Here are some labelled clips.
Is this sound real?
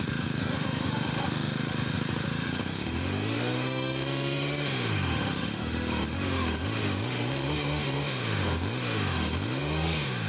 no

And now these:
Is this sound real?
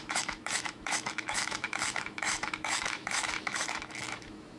no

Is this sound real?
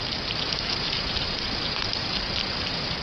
yes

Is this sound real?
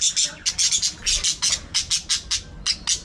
yes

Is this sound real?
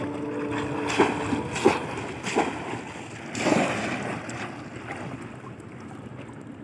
yes